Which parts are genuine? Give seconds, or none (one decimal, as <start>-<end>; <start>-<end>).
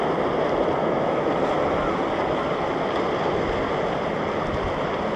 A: 0.0-0.8; 1.3-5.2